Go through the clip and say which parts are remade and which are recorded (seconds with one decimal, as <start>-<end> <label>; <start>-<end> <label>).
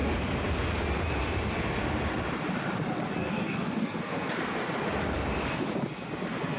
0.0-3.2 recorded; 3.2-4.3 remade; 4.3-6.6 recorded